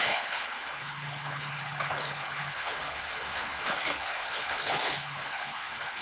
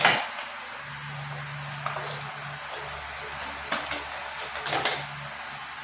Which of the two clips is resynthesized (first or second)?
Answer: first